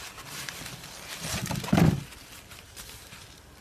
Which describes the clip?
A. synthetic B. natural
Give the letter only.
A